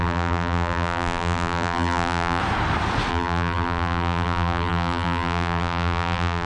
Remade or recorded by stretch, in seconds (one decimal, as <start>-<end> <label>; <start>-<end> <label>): 0.0-2.4 remade; 2.4-3.1 recorded; 3.1-6.5 remade